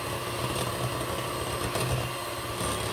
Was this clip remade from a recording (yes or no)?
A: no